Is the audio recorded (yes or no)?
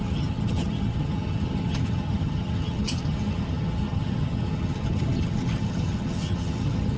no